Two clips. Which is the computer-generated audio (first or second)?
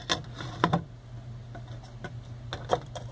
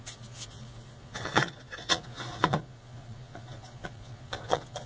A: second